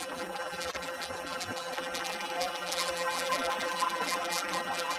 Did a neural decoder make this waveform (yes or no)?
yes